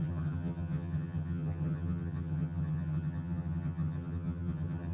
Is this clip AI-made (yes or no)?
yes